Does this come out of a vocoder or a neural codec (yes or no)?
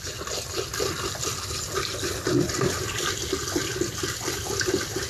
no